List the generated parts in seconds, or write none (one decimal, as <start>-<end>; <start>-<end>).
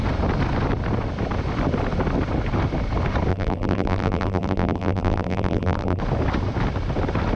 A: 3.3-6.0